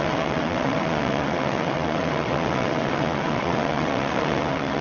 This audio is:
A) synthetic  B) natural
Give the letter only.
A